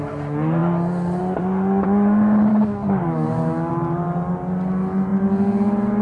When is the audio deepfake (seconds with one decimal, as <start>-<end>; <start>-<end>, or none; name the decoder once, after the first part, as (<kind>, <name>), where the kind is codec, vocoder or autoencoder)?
2.5-3.7 (codec, DAC)